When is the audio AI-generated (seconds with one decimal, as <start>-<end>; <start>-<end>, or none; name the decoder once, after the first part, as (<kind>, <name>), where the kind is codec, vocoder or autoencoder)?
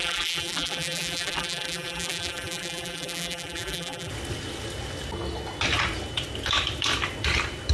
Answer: 0.0-4.1 (vocoder, BigVGAN v2)